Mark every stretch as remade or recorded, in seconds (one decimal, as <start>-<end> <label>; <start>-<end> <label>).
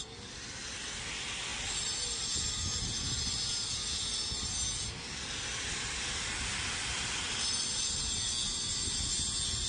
0.0-9.7 recorded